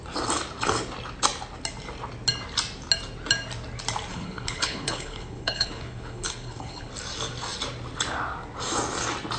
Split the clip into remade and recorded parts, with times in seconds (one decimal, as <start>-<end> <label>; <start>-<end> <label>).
0.0-4.1 recorded; 4.1-6.9 remade; 6.9-9.4 recorded